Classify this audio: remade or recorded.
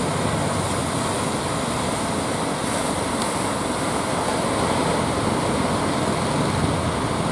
recorded